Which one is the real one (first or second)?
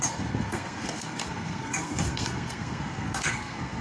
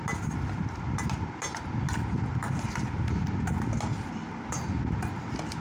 second